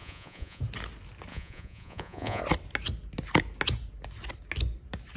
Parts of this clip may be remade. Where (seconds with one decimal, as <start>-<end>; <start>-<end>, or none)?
0.0-0.6; 1.3-2.4